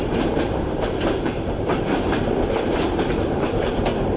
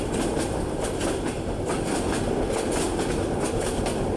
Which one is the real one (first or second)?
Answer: second